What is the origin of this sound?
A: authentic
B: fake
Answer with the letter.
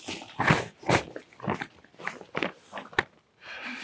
A